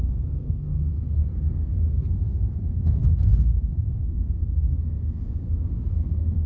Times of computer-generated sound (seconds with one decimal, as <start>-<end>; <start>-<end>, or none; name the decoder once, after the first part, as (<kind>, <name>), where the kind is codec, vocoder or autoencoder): 0.0-6.5 (codec, SNAC)